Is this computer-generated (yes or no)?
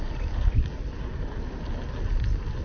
no